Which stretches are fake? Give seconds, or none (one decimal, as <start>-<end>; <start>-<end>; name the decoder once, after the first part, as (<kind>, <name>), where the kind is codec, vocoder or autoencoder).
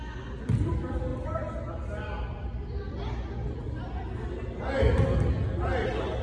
none